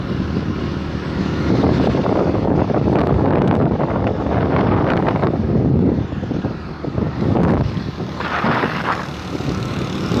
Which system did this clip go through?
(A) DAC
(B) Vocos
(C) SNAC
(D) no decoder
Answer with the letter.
A